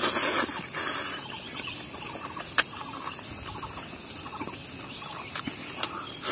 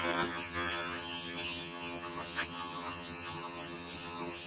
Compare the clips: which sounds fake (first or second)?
second